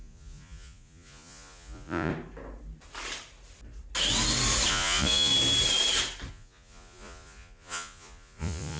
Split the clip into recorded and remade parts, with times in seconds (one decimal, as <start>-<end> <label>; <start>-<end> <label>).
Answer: 0.0-2.1 remade; 2.1-4.7 recorded; 4.7-5.3 remade; 5.3-6.3 recorded; 6.3-8.8 remade